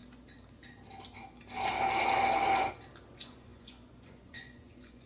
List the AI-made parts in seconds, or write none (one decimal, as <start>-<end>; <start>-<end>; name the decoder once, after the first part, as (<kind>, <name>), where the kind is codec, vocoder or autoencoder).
3.1-5.1 (vocoder, Vocos)